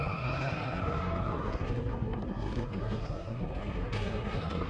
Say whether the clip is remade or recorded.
remade